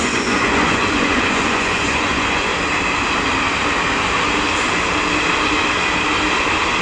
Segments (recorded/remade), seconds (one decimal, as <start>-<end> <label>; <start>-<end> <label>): 0.0-2.5 remade; 2.5-6.8 recorded